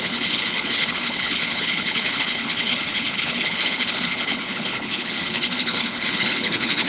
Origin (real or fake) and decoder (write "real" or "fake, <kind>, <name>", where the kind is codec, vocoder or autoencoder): fake, codec, HILCodec